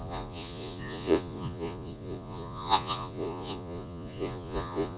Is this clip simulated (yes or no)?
yes